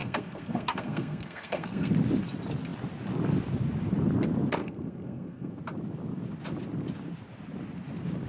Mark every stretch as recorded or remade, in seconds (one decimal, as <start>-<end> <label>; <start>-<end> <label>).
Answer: 0.0-1.9 remade; 1.9-4.6 recorded; 4.6-5.6 remade; 5.6-8.3 recorded